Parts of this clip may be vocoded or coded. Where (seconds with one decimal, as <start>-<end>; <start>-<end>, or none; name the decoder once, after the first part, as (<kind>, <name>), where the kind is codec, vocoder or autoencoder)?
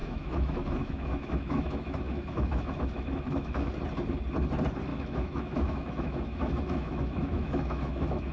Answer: 0.0-3.7 (autoencoder, DAC-VAE); 4.9-8.3